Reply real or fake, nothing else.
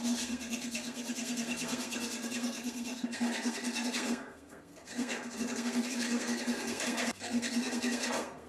fake